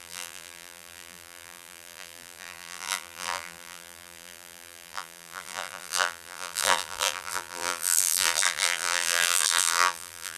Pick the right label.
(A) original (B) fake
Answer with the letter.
B